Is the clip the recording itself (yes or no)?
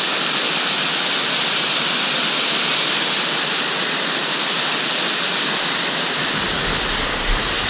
yes